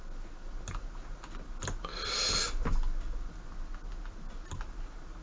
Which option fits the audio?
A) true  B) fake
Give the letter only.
A